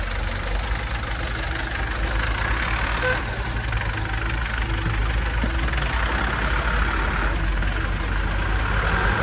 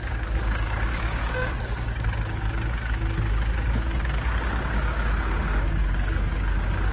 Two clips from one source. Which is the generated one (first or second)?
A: second